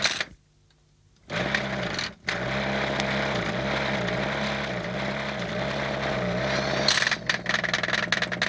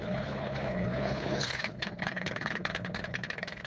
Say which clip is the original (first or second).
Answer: first